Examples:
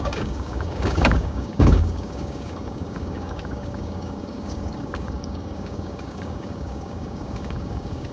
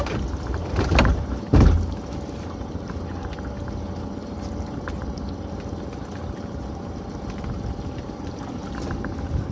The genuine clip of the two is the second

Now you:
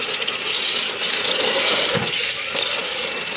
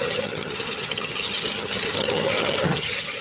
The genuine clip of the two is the first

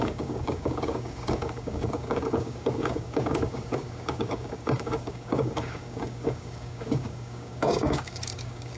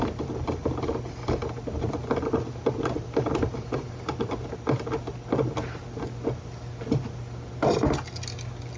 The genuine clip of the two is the second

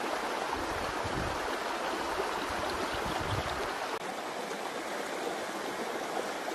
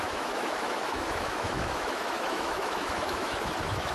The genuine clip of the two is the first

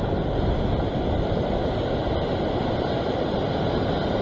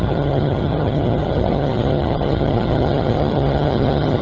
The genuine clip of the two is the first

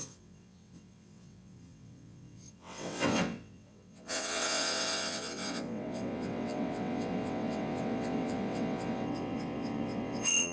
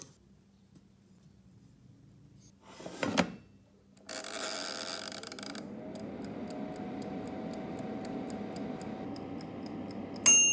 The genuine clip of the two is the second